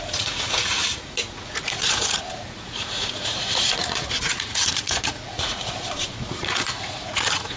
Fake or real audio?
fake